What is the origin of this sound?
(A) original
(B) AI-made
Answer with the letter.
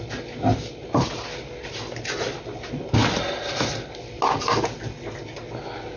A